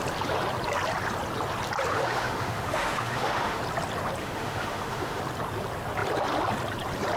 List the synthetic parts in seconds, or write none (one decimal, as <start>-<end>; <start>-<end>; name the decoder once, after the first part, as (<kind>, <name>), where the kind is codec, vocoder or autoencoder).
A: 1.9-3.6 (autoencoder, DAC-VAE); 4.2-5.2